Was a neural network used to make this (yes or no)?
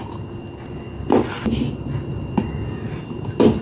no